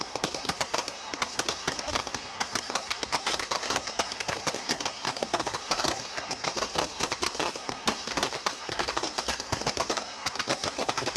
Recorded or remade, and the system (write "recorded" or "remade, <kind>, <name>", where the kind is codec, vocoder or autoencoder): remade, codec, SNAC